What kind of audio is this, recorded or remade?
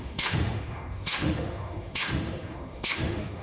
remade